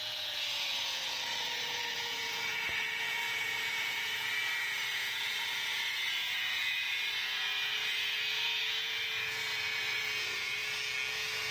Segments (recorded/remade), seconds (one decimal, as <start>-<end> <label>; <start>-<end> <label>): 0.0-10.6 remade; 10.6-11.5 recorded